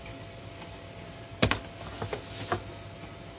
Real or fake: real